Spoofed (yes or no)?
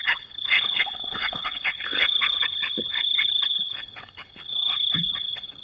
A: yes